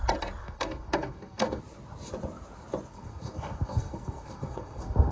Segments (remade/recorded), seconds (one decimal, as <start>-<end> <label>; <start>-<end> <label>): 0.0-0.4 recorded; 0.4-1.6 remade; 1.6-2.9 recorded; 2.9-5.1 remade